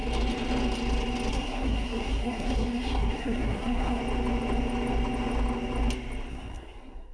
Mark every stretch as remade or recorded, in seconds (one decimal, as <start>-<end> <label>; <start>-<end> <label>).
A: 0.0-1.3 recorded; 1.3-4.0 remade; 4.0-6.3 recorded; 6.3-7.1 remade